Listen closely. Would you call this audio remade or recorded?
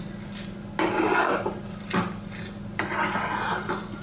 recorded